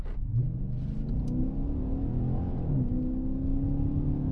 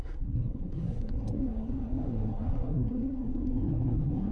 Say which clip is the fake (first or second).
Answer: second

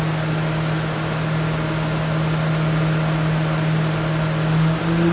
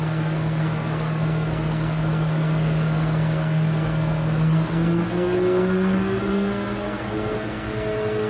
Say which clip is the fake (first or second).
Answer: second